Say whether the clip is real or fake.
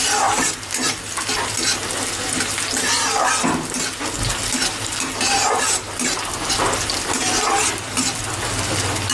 real